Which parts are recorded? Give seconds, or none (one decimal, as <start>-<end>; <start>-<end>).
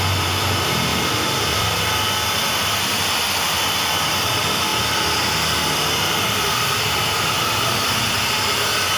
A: 0.0-0.9; 4.1-4.7; 6.8-9.0